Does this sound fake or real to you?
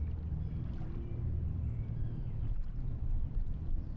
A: fake